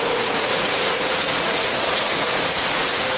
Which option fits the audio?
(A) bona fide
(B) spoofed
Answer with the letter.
B